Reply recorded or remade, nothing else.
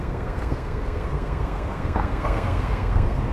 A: remade